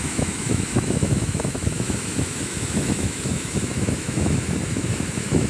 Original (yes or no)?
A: no